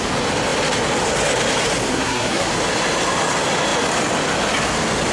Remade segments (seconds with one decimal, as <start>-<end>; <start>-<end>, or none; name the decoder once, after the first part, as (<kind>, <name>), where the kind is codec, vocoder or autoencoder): 1.9-2.5 (codec, SNAC)